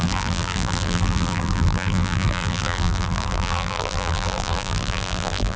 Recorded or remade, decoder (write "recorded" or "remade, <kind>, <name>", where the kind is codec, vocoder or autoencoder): remade, vocoder, BigVGAN v2